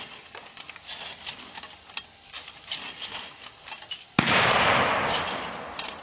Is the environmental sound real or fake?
real